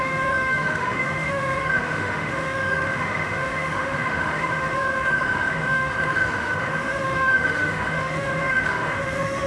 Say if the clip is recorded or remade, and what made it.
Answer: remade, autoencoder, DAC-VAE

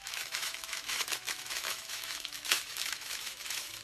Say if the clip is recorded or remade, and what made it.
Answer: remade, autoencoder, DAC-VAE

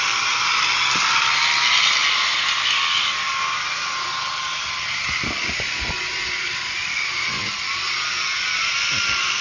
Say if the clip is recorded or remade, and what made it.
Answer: recorded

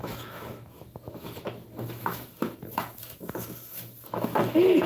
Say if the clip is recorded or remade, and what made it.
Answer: remade, autoencoder, DAC-VAE